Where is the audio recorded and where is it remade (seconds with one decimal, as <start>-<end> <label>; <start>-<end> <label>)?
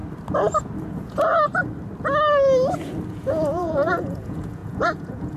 0.0-0.8 recorded; 0.8-1.3 remade; 1.3-3.1 recorded; 3.1-5.4 remade